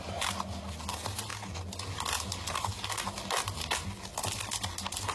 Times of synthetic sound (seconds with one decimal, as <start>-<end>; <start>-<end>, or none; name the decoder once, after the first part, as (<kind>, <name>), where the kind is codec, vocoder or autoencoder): none

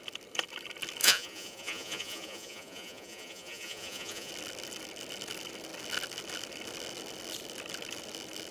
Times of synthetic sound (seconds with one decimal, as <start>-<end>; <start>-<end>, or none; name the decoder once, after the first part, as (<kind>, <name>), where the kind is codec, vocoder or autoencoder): 1.0-4.3 (vocoder, Vocos)

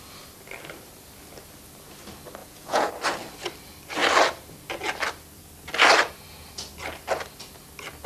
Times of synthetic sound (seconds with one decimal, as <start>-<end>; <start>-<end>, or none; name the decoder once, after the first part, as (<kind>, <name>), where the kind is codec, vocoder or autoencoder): 2.4-2.9 (vocoder, Vocos)

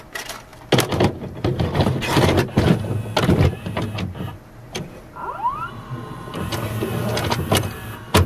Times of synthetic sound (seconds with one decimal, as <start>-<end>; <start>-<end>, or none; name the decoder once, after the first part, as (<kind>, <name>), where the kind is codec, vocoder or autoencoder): none

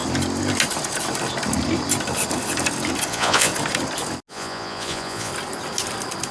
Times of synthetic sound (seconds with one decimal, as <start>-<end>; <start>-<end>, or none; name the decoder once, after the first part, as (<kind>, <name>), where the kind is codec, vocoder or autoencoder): 3.1-3.5 (vocoder, Vocos); 4.3-5.3